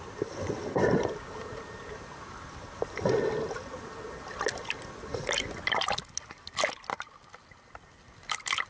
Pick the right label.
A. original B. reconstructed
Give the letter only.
A